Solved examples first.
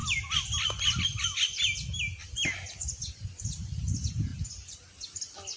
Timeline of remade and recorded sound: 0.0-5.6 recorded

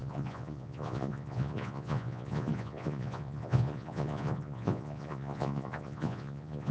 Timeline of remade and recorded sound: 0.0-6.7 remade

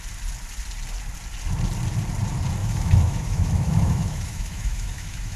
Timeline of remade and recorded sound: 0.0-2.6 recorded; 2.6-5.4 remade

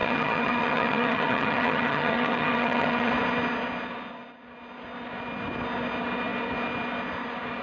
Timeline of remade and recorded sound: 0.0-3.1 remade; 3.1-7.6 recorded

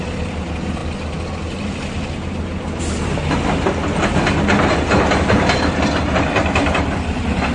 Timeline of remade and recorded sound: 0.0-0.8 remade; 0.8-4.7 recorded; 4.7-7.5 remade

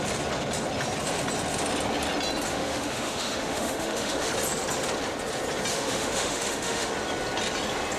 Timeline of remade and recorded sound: 0.0-2.5 recorded; 2.5-4.3 remade; 4.3-5.7 recorded; 5.7-6.9 remade; 6.9-8.0 recorded

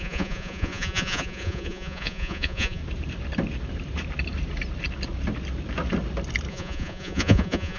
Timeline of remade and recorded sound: 0.0-2.8 remade; 2.8-6.5 recorded; 6.5-7.8 remade